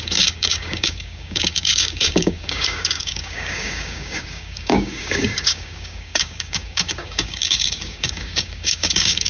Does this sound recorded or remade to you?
remade